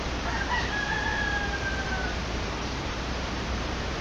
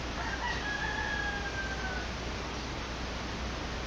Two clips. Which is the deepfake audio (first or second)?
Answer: first